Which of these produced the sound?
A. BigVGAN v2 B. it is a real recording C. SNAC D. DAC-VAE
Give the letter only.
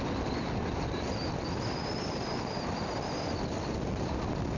B